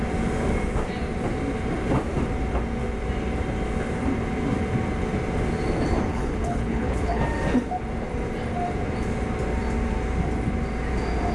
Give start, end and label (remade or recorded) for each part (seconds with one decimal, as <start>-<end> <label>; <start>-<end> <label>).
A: 0.0-6.1 recorded; 6.1-7.2 remade; 7.2-11.3 recorded